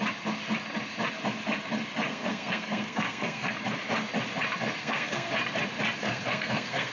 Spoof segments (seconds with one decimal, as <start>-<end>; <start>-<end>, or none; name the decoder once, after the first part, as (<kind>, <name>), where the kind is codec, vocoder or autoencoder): 2.1-3.5 (codec, SNAC); 4.8-5.3; 6.0-6.9

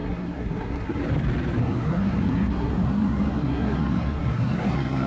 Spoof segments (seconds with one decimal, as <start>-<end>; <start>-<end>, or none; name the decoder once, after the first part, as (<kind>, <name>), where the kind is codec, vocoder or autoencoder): 0.0-1.0 (codec, SNAC); 1.6-5.1

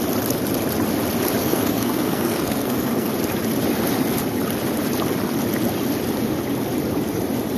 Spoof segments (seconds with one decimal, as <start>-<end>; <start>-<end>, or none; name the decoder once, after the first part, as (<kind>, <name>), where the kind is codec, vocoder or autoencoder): 1.4-3.1 (codec, SNAC)

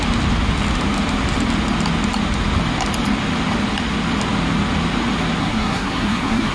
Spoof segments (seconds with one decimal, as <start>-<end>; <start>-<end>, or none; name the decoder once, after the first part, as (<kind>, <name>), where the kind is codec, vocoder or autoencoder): 5.4-6.5 (codec, SNAC)

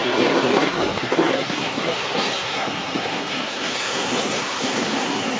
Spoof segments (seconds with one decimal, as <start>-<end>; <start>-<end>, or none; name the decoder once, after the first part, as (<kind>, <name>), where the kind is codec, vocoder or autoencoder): 0.0-5.4 (codec, SNAC)

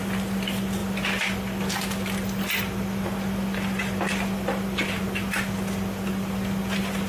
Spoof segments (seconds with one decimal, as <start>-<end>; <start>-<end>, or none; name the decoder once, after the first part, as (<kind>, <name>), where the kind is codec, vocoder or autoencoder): none